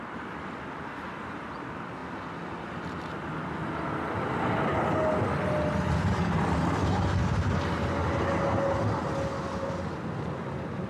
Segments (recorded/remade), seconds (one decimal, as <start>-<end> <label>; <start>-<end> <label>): 0.0-10.9 recorded